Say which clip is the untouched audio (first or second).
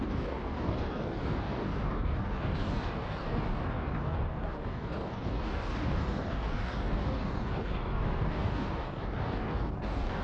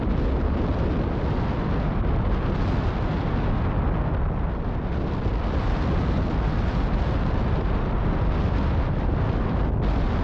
second